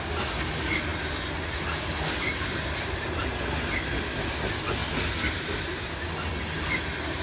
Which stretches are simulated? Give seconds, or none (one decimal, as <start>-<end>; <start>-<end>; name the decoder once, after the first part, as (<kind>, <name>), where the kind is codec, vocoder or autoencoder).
none